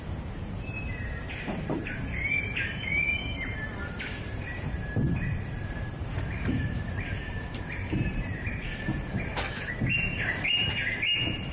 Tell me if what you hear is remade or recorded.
remade